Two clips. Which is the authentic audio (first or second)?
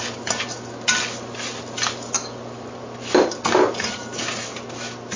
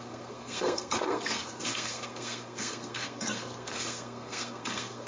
first